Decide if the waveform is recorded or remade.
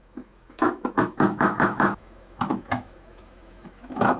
remade